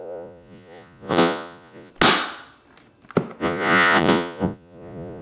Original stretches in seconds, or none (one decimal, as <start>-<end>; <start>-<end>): 1.9-3.4